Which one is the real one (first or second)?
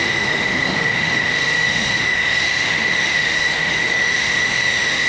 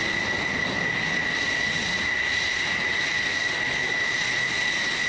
second